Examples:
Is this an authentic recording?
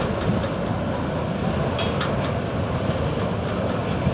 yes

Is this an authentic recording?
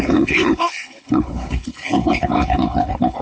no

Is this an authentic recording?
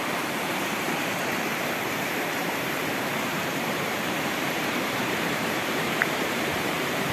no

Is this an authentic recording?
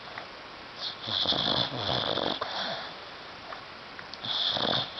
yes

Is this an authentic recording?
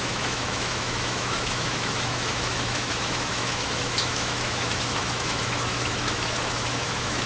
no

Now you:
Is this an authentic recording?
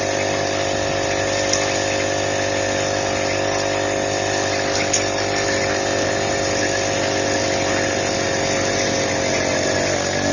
yes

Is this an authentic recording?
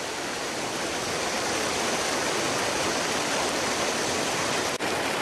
yes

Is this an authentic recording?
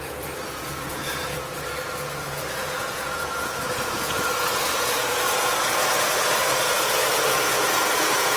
no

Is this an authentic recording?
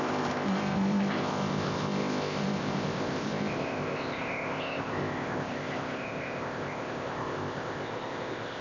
no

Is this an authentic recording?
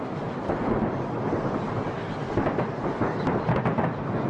yes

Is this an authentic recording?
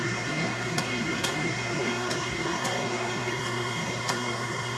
no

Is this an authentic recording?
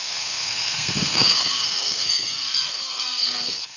no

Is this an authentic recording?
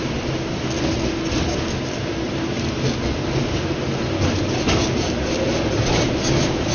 yes